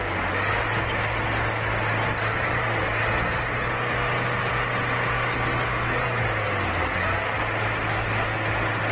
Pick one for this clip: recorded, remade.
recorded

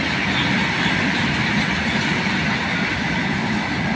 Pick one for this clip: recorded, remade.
recorded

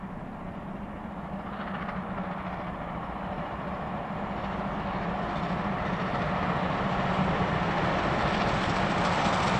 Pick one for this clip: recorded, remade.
recorded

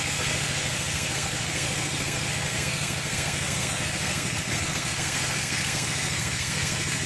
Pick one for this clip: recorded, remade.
remade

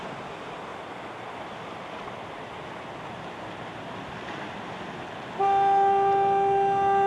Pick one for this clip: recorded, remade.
recorded